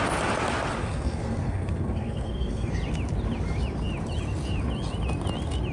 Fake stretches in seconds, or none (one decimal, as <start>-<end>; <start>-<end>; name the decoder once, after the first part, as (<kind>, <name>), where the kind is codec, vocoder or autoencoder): 0.8-2.7 (codec, SNAC)